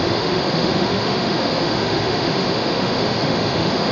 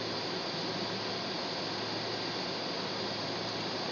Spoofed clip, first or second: first